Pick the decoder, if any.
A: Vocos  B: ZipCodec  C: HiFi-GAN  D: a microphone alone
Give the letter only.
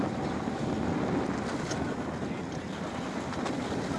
D